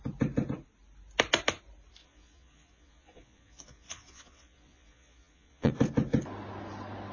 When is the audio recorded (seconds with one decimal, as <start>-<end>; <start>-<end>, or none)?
0.0-2.0; 5.7-7.1